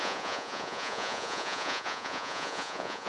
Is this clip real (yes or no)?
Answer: no